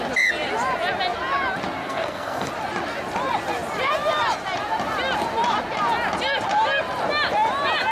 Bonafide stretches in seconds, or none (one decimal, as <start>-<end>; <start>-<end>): 0.0-1.8; 2.5-7.9

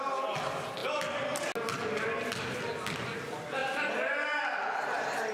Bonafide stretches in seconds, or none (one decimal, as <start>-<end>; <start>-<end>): 0.0-5.3

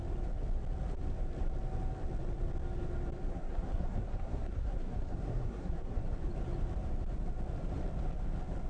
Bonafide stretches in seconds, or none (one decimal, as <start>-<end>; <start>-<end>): 0.0-3.3; 6.0-8.7

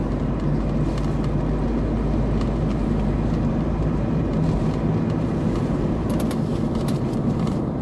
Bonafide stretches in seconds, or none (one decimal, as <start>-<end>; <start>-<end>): 0.0-3.5; 4.3-5.3